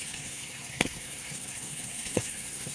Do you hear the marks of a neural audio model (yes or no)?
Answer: yes